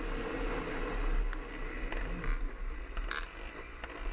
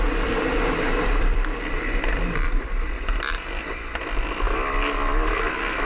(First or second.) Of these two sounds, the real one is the first